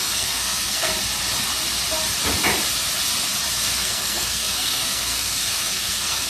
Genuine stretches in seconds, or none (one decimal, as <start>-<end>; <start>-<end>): 0.9-3.5